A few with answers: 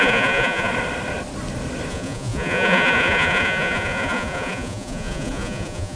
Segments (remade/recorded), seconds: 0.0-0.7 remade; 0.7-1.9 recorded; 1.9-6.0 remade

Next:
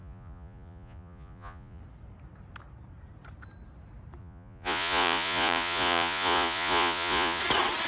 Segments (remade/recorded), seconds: 0.0-1.8 remade; 1.8-4.2 recorded; 4.2-7.4 remade; 7.4-7.9 recorded

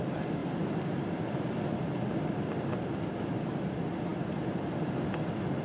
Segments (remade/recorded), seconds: 0.0-5.6 recorded